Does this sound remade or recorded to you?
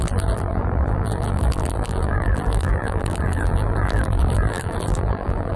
remade